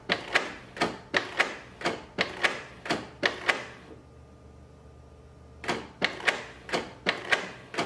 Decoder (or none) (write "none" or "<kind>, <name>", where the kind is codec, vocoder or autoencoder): none